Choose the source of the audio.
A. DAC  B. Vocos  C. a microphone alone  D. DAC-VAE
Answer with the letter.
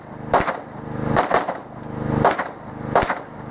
C